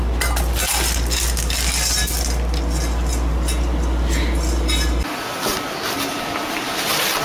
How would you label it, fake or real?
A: real